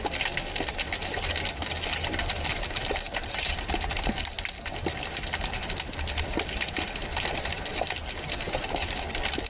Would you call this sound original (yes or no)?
yes